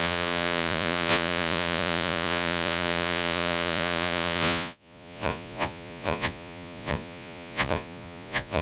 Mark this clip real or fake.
fake